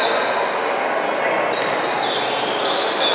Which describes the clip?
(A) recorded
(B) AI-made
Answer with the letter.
A